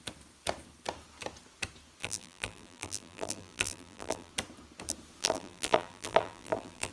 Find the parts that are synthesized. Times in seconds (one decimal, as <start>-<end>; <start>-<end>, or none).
2.0-4.3; 5.2-6.9